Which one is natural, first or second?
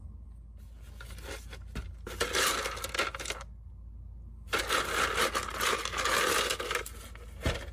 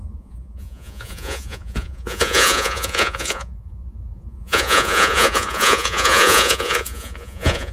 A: first